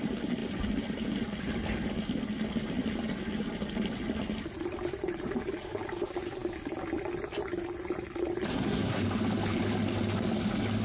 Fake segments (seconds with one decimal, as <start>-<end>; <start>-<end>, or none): 8.5-9.0